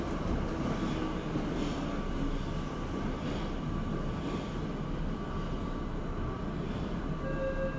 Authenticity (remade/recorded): recorded